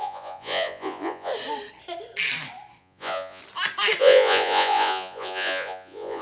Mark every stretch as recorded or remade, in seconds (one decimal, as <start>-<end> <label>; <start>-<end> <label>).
0.0-1.3 remade; 1.3-2.8 recorded; 2.8-3.4 remade; 3.4-4.0 recorded; 4.0-6.2 remade